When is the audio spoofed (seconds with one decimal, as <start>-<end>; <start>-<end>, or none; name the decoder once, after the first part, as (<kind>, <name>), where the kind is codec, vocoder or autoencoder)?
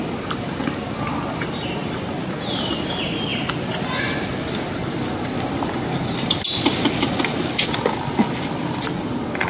none